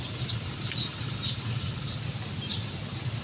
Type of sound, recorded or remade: recorded